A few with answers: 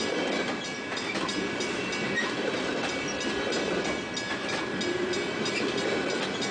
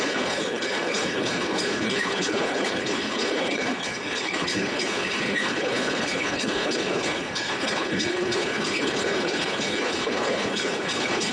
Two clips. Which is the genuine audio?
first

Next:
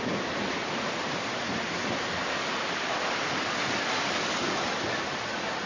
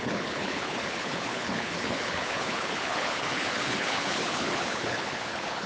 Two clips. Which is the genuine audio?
first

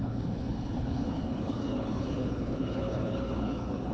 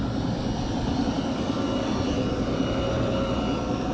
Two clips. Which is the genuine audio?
second